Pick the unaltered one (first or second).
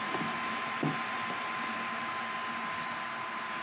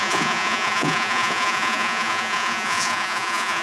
first